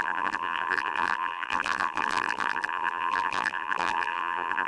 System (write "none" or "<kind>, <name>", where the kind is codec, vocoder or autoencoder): vocoder, BigVGAN v2